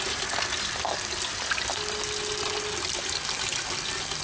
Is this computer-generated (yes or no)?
no